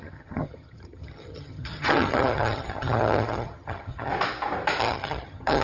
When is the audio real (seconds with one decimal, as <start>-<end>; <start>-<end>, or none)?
4.1-4.8